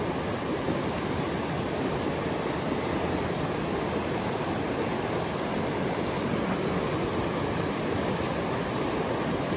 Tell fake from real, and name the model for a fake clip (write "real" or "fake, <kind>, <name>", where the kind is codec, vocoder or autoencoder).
real